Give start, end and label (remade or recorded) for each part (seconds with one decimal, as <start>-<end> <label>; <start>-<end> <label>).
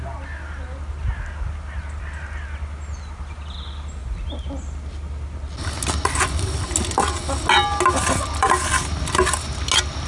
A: 0.0-10.1 recorded